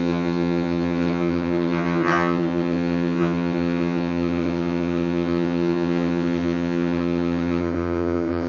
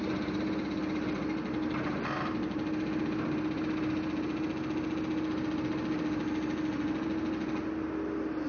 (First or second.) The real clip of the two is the second